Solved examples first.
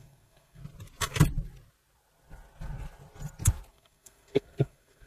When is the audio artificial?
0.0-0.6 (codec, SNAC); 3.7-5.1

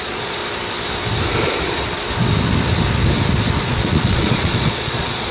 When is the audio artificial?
0.0-0.4 (vocoder, Vocos); 3.6-5.3

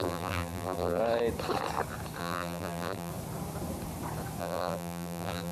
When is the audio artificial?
0.0-1.0 (vocoder, BigVGAN v2); 2.2-3.1; 4.4-5.5

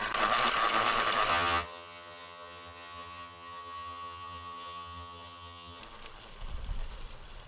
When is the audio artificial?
1.3-5.8 (vocoder, HiFi-GAN)

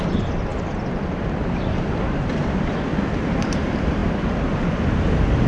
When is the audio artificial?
0.0-2.3 (vocoder, BigVGAN v2); 3.1-4.0

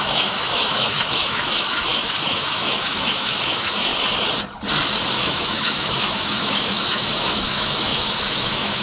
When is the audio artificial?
0.0-3.9 (autoencoder, DAC-VAE); 5.1-8.8

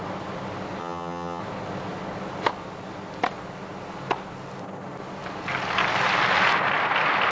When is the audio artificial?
0.8-1.4 (vocoder, HiFi-GAN)

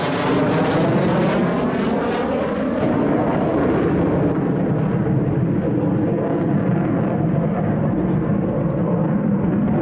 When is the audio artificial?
none